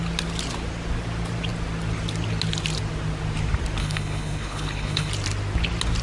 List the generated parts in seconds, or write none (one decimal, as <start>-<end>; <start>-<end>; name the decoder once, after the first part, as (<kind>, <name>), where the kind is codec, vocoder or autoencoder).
3.8-5.1 (codec, HILCodec)